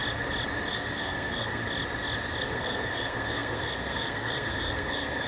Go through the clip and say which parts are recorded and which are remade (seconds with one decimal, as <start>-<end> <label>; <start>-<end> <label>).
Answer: 0.0-0.7 recorded; 0.7-1.6 remade; 1.6-2.4 recorded; 2.4-5.3 remade